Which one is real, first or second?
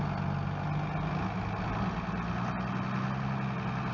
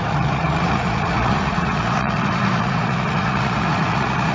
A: first